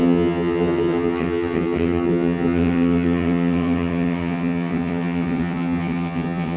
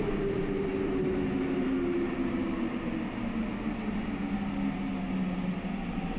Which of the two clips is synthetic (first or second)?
first